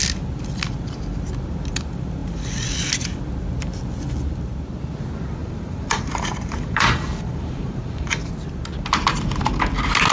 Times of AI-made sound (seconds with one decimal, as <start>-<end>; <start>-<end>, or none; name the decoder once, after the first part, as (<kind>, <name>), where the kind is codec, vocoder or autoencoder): 5.4-8.3 (vocoder, BigVGAN v2)